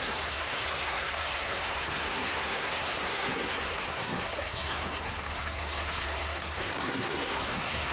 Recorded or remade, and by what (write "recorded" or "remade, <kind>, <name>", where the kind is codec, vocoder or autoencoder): remade, codec, SNAC